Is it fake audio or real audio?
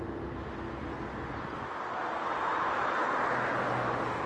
real